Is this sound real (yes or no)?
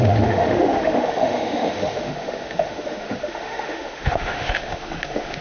no